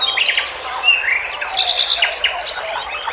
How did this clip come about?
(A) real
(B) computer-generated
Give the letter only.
A